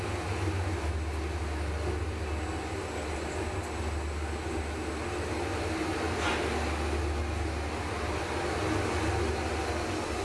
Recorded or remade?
recorded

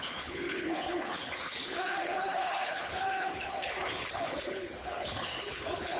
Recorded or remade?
remade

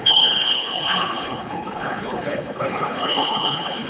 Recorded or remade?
remade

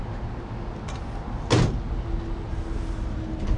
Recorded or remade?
recorded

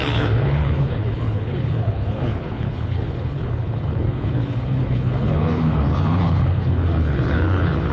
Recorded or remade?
remade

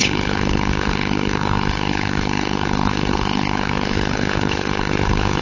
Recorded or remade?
remade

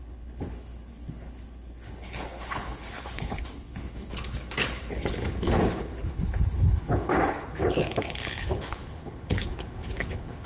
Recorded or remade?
remade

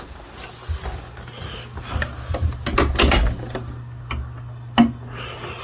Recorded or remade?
recorded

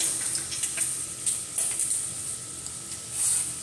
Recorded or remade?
recorded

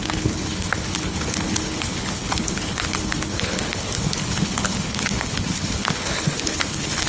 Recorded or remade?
remade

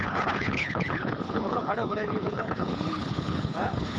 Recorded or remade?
remade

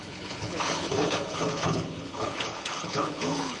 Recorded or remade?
remade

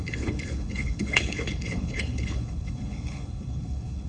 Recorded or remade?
remade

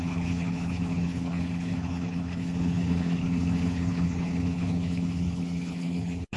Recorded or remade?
remade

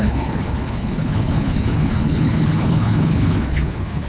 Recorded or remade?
remade